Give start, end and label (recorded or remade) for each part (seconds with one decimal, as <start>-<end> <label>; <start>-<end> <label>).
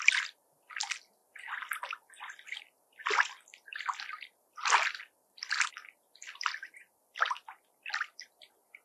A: 0.0-8.8 recorded